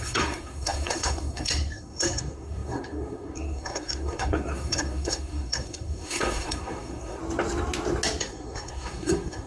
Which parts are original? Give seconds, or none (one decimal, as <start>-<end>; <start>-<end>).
7.2-8.2